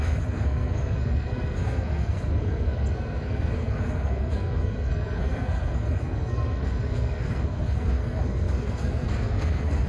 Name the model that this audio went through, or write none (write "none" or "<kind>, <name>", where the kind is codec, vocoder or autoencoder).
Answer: codec, SNAC